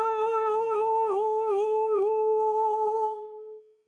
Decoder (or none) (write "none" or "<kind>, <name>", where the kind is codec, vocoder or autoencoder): autoencoder, DAC-VAE